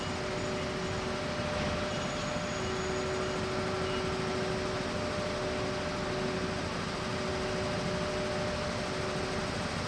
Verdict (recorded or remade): recorded